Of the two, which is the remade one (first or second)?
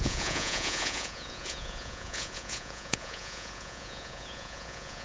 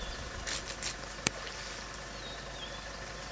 first